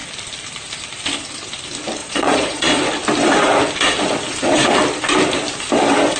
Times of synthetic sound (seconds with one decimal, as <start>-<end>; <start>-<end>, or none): 2.0-2.8